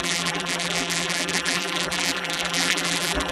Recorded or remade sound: remade